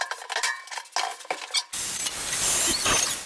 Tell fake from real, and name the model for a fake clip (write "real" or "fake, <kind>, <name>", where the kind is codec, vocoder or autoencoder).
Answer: real